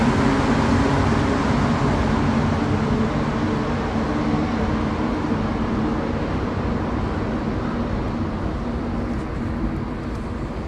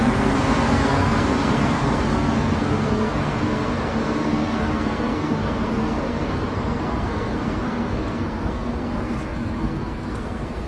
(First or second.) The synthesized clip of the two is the second